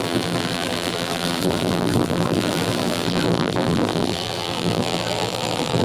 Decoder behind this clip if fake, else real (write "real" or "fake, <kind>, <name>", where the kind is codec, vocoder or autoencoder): fake, vocoder, BigVGAN v2